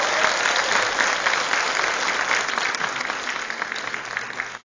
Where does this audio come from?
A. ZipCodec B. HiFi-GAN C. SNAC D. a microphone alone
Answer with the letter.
D